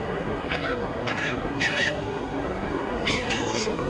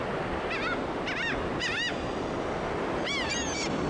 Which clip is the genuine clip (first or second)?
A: second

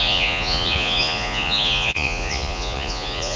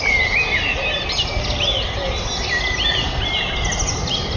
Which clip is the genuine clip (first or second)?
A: second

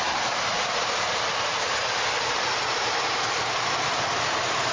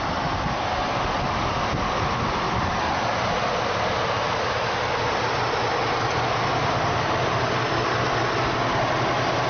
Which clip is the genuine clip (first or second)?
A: second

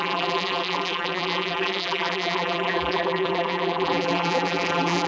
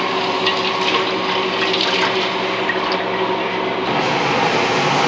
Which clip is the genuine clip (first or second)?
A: second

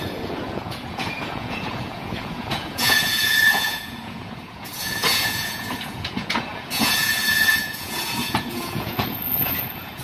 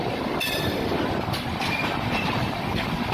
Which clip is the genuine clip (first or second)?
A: second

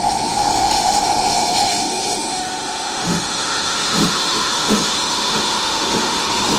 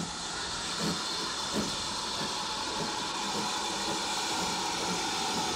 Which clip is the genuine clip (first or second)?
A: second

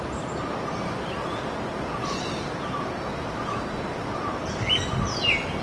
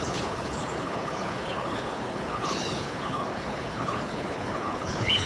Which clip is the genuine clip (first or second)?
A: first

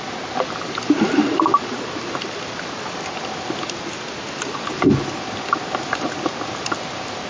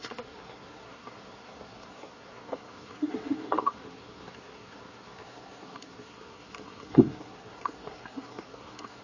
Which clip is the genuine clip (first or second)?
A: first